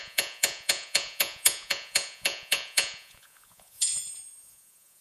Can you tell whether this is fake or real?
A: fake